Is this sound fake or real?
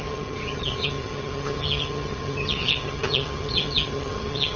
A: fake